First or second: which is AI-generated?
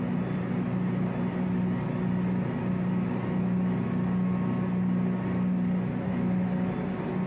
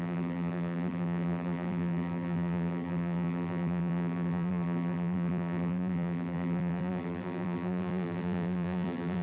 second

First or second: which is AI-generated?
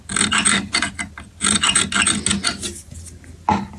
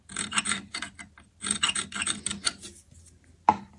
second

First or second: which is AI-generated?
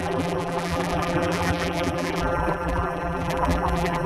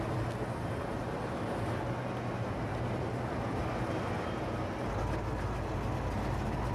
first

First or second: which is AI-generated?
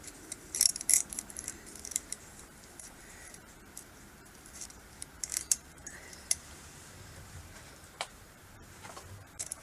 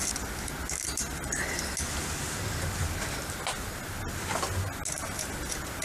first